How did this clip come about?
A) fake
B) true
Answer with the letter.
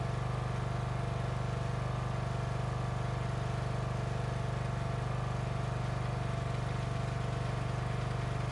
B